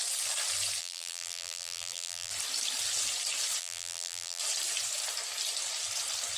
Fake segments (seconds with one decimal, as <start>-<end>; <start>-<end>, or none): 0.8-2.3; 3.6-4.4